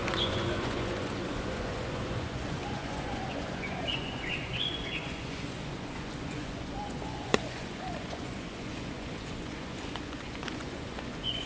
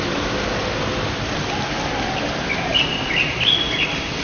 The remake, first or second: first